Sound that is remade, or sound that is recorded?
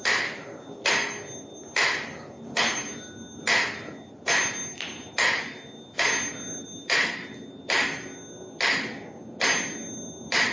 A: recorded